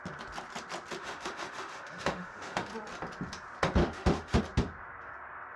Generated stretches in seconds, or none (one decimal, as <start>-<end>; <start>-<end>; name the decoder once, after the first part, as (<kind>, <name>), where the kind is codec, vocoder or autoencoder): 1.0-2.7 (autoencoder, DAC-VAE); 3.8-4.4